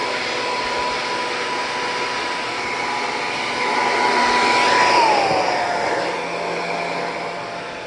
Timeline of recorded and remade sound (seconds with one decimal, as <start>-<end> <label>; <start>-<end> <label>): 0.0-7.9 recorded